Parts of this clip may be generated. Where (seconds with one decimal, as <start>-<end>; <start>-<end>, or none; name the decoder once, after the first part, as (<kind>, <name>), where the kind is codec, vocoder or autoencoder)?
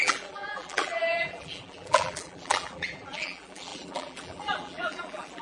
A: 0.0-5.4 (vocoder, BigVGAN v2)